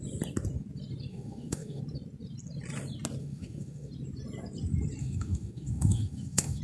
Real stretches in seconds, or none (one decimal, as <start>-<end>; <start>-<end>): 0.0-1.1; 1.8-3.2; 3.9-5.0